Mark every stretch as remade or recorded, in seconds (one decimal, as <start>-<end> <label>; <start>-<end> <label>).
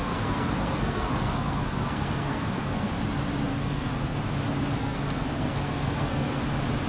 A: 0.0-2.9 remade; 2.9-3.5 recorded; 3.5-4.2 remade; 4.2-4.8 recorded; 4.8-6.4 remade; 6.4-6.9 recorded